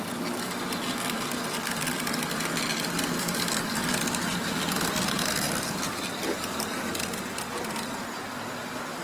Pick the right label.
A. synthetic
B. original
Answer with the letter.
B